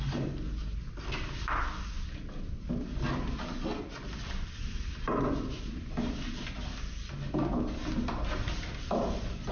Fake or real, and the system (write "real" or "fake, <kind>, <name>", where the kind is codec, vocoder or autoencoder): real